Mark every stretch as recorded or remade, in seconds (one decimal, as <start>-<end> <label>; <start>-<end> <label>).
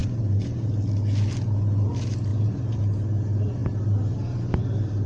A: 0.0-0.7 remade; 0.7-2.3 recorded; 2.3-2.8 remade; 2.8-5.1 recorded